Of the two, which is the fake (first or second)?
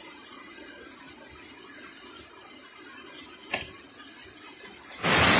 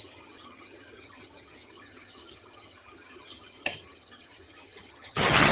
second